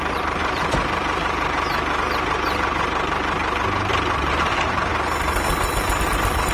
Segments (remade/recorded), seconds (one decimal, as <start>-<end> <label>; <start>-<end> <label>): 0.0-4.9 remade; 4.9-6.0 recorded; 6.0-6.5 remade